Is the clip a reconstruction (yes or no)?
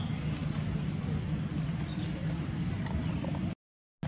no